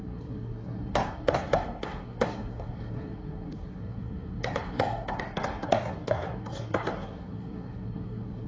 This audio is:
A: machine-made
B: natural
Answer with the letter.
A